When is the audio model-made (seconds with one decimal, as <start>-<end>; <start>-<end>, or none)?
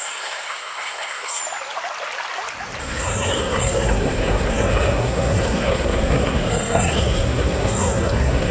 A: 0.0-1.4; 2.8-8.5